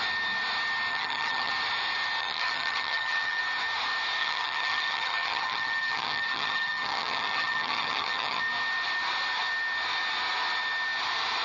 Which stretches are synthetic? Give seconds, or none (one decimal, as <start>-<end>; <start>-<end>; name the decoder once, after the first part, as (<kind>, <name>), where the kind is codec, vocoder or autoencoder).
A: 0.9-1.5 (vocoder, HiFi-GAN); 2.2-3.4; 4.2-8.4